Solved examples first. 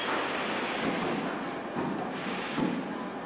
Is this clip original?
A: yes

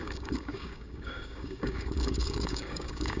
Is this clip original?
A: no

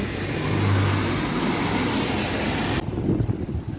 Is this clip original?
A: yes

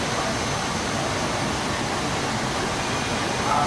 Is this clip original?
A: yes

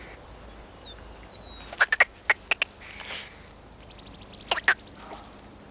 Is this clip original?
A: yes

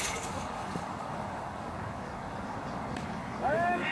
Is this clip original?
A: no